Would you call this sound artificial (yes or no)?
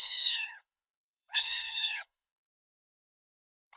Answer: yes